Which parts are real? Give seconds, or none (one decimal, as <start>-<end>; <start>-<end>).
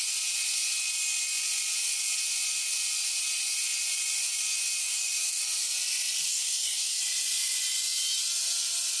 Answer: 0.0-4.8; 5.4-6.3; 7.0-9.0